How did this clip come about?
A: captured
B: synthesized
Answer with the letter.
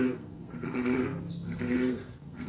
B